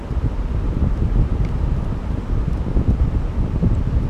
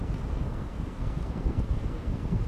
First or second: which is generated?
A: second